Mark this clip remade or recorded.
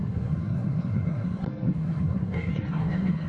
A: remade